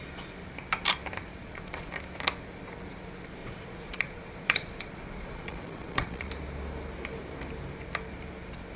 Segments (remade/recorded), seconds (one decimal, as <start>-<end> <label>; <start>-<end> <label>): 0.0-1.3 recorded; 1.3-1.9 remade; 1.9-3.4 recorded; 3.4-6.3 remade; 6.3-8.8 recorded